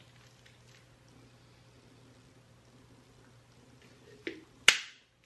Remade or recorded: recorded